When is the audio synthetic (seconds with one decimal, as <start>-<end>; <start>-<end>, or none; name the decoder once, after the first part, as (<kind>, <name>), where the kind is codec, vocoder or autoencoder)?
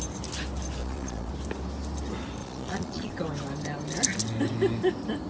0.8-1.3 (vocoder, Vocos); 2.4-3.1